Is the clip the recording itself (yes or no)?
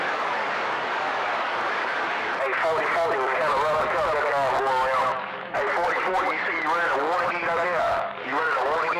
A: no